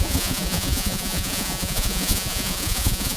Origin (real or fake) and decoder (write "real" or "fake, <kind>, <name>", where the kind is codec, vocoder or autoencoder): fake, vocoder, Vocos